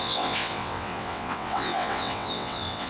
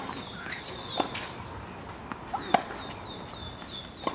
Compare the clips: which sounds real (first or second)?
second